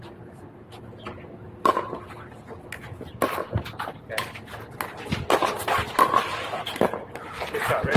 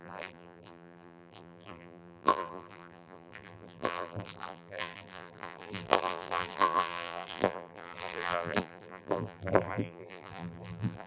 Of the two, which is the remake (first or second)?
second